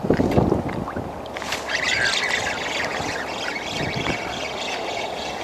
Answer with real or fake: real